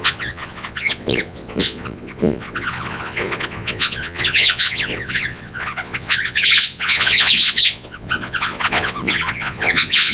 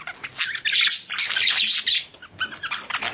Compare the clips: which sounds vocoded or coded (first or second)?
first